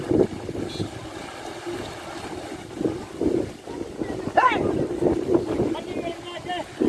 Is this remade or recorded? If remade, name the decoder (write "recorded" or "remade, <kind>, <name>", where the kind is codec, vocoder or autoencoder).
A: recorded